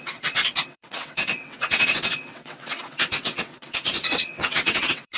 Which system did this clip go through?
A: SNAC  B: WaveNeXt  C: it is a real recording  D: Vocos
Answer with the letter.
B